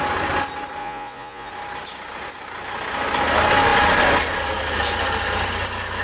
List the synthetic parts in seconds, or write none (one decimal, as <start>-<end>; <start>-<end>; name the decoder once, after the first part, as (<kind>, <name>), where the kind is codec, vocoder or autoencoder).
0.8-1.5 (vocoder, Vocos)